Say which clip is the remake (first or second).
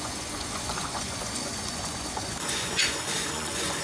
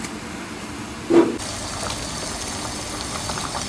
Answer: first